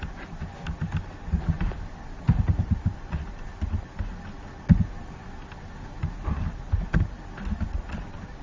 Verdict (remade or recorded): recorded